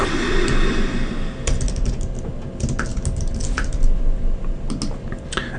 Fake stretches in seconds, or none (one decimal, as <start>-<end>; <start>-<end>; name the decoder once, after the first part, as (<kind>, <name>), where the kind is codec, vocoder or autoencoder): none